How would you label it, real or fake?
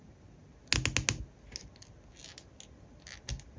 real